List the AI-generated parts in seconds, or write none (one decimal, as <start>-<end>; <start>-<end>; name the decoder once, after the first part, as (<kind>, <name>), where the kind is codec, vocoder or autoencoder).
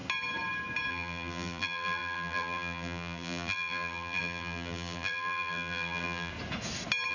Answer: 0.9-6.3 (vocoder, BigVGAN v2)